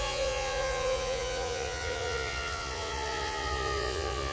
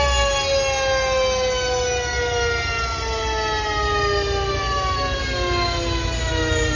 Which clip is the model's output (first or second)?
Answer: first